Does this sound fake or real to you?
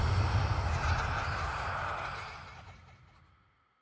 real